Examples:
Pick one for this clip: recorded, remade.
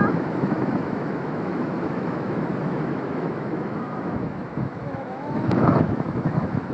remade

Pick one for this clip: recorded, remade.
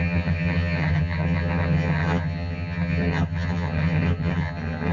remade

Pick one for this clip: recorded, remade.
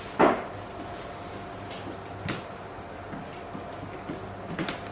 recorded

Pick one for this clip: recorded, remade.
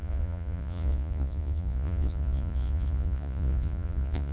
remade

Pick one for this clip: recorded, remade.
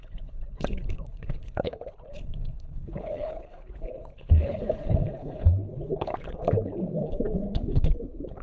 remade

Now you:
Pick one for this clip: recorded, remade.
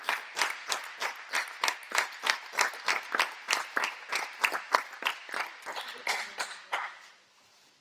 recorded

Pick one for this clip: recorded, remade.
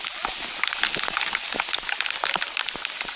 recorded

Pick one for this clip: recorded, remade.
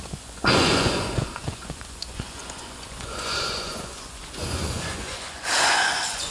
remade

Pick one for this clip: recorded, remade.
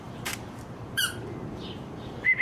remade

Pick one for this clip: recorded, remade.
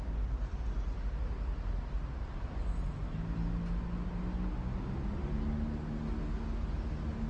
recorded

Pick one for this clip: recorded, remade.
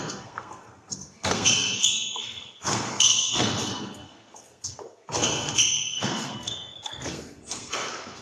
remade